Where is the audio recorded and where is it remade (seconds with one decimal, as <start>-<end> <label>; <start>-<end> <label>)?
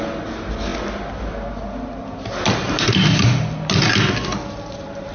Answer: 0.0-5.1 recorded